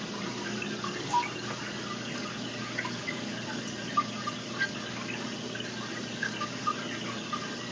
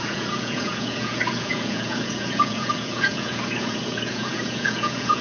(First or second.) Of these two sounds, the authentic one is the first